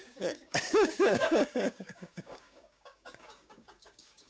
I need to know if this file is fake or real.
fake